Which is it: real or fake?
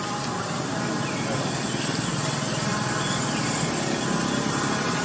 real